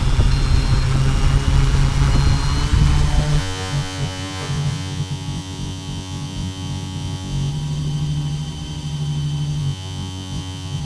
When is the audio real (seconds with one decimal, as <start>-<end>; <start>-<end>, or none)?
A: 0.0-3.4; 7.5-9.6